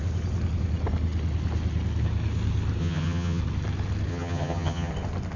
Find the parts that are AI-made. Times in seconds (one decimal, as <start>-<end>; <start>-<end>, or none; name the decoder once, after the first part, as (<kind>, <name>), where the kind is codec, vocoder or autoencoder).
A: 2.8-3.4 (vocoder, HiFi-GAN); 4.1-4.9